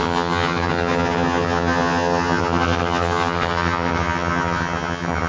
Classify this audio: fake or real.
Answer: fake